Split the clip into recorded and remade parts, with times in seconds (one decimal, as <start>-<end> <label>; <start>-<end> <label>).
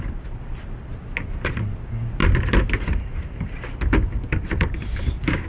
0.0-5.5 recorded